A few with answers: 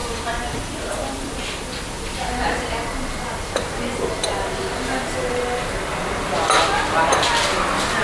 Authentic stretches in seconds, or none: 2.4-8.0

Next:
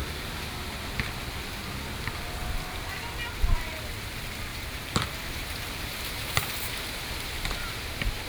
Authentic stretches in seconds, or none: 0.0-4.5; 7.1-8.3

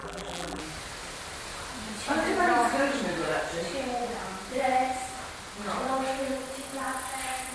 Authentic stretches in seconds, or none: 0.6-7.5

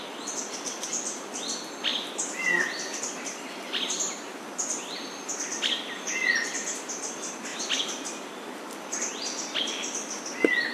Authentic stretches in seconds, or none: 0.0-10.7

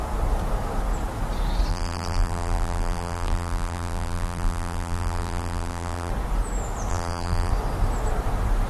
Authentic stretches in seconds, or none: 0.0-1.7; 6.1-6.9; 7.5-8.7

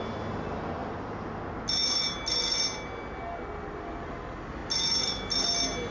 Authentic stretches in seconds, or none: 0.0-5.9

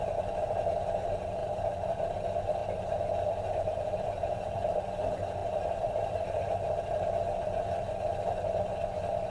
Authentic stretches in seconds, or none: 0.0-1.4; 2.2-2.6; 4.8-5.4; 7.1-9.3

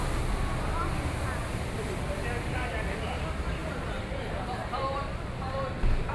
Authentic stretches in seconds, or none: 0.0-1.5; 3.1-6.1